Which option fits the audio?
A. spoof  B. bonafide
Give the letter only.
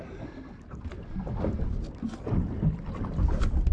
B